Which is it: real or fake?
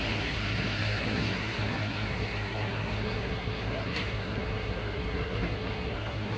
fake